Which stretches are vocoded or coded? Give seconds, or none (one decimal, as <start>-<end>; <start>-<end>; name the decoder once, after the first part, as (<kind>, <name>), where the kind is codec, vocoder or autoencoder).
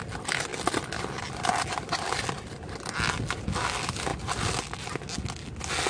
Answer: none